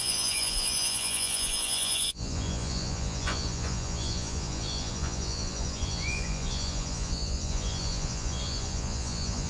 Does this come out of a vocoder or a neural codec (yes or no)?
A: yes